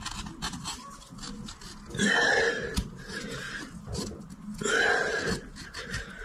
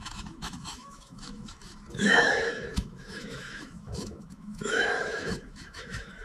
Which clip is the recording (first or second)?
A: first